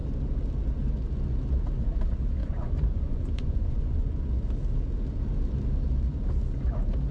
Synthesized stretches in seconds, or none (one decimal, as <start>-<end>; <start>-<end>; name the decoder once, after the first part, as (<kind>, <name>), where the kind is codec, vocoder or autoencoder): 2.4-4.2 (vocoder, Vocos)

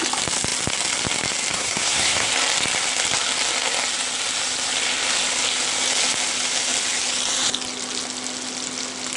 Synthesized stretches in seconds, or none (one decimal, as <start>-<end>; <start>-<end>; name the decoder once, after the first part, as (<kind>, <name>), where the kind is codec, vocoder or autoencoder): 1.5-2.3 (codec, SNAC)

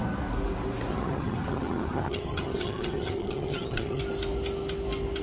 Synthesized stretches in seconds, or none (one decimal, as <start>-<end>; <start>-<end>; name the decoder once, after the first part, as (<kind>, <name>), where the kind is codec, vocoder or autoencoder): 0.9-4.0 (vocoder, HiFi-GAN)

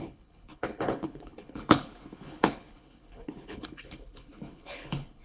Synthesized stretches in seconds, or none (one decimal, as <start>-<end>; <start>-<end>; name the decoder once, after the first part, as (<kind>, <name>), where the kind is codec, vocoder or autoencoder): 0.0-5.2 (codec, HILCodec)

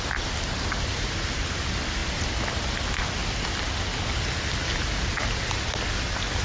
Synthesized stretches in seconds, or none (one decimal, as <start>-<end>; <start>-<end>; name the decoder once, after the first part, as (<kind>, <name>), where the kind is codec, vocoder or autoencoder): none

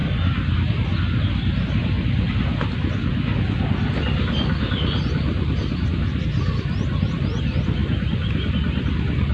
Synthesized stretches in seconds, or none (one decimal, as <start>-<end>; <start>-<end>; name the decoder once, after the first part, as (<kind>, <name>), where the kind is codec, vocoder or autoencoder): none

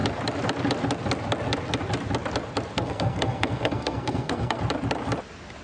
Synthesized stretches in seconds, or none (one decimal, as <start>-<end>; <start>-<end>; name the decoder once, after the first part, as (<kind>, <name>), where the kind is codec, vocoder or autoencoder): 2.8-4.6 (codec, SNAC)